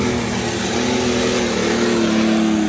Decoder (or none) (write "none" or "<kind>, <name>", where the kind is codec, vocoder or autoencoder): none